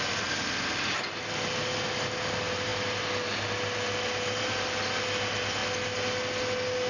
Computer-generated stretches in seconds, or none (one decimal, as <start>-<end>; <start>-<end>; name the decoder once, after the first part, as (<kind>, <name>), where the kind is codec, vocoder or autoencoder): none